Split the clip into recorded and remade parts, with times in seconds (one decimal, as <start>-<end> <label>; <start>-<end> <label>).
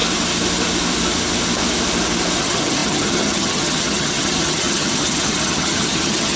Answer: 0.0-2.4 recorded; 2.4-6.4 remade